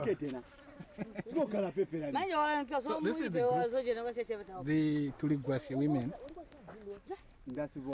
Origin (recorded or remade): recorded